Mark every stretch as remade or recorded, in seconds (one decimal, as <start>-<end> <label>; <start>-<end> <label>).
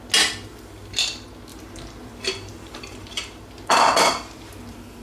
0.0-1.5 recorded; 1.5-4.5 remade; 4.5-5.0 recorded